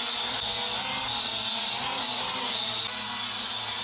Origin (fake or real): real